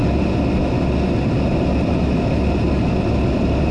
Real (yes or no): yes